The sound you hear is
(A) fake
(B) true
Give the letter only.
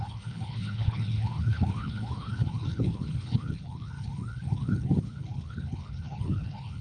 A